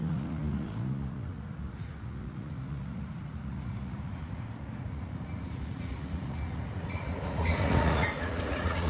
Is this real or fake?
fake